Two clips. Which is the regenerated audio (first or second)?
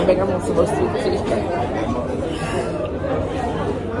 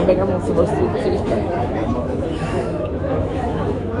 second